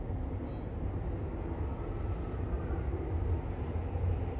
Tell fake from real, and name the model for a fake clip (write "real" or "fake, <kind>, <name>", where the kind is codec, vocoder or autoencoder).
real